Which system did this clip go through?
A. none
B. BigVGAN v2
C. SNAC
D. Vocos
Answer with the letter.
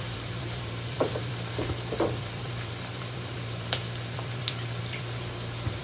B